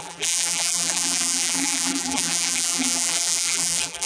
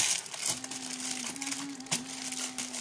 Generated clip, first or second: first